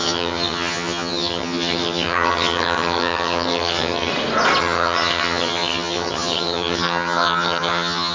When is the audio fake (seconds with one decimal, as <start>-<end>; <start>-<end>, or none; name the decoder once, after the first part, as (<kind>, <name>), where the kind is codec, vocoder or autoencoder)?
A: 0.0-4.1 (vocoder, HiFi-GAN); 4.6-8.1